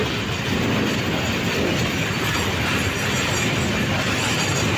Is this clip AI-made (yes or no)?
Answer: no